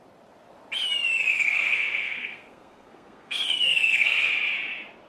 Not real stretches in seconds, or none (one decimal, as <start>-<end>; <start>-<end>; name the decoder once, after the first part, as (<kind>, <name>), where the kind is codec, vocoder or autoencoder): 1.3-4.3 (codec, SNAC)